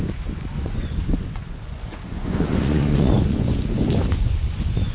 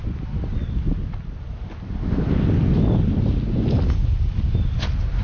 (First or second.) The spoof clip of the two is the first